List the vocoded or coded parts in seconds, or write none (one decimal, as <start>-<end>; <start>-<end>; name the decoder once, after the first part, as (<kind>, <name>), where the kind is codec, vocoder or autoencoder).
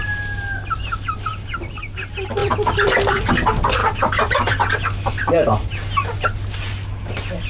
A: 1.3-1.8 (vocoder, BigVGAN v2); 2.4-3.3; 3.8-4.4